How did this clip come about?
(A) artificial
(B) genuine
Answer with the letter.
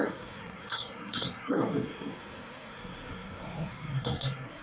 A